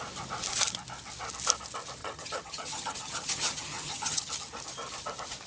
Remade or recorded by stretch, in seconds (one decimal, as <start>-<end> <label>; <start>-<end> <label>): 0.0-2.0 recorded; 2.0-4.3 remade; 4.3-5.5 recorded